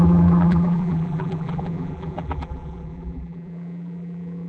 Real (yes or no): no